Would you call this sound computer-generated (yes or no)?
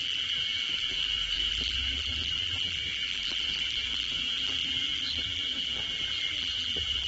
yes